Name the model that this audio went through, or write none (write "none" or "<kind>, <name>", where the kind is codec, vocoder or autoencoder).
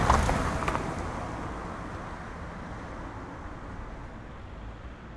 none